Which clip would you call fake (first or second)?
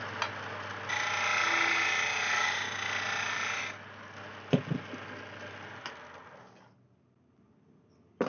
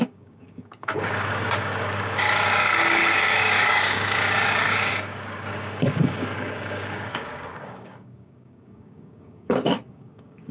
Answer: second